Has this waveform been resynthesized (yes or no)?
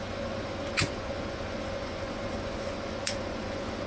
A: yes